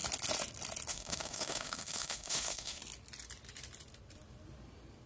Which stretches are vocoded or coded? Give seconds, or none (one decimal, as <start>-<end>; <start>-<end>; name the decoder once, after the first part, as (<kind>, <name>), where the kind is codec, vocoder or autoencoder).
0.9-2.8 (autoencoder, DAC-VAE)